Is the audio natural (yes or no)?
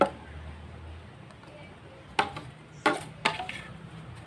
yes